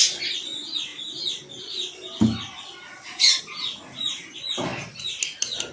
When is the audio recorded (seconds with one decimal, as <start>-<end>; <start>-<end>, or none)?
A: 0.0-5.7